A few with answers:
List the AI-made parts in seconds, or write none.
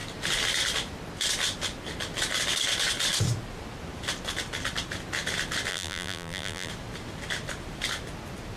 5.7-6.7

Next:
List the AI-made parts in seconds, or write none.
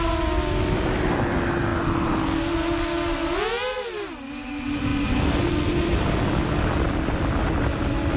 4.9-6.4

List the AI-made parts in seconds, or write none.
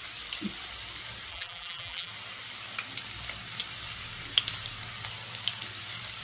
1.3-2.1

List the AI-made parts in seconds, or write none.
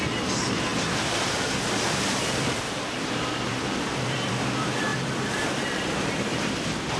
0.0-0.7; 3.0-7.0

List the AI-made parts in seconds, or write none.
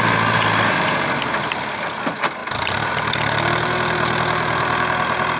2.4-2.9